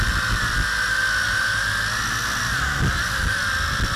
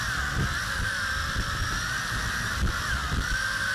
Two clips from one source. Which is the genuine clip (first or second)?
first